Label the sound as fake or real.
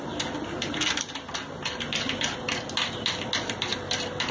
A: real